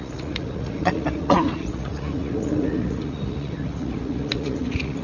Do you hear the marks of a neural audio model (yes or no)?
yes